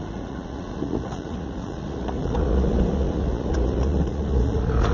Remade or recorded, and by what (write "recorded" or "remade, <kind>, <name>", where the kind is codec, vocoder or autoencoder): remade, vocoder, Vocos